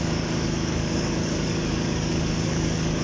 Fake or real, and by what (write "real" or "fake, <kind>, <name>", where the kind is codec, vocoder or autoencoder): fake, codec, DAC